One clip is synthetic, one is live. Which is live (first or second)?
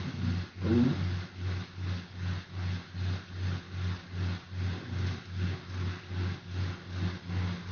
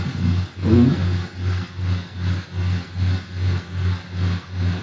first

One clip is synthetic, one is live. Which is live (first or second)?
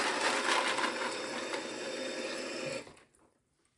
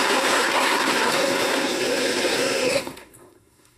first